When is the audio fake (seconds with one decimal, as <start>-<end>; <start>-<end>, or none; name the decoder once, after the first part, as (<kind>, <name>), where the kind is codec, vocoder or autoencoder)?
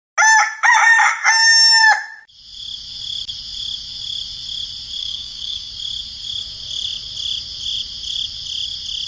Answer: 5.0-5.7 (codec, DAC)